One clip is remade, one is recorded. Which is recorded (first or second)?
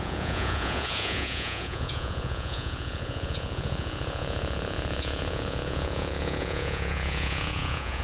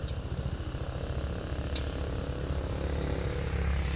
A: second